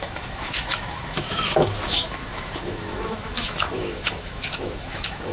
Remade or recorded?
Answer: remade